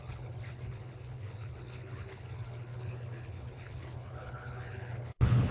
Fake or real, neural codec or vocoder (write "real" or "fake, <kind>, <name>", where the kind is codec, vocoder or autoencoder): fake, codec, HILCodec